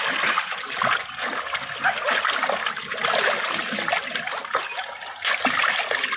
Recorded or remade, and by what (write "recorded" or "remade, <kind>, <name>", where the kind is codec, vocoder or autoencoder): recorded